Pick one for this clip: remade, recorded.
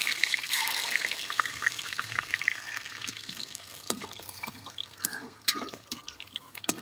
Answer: remade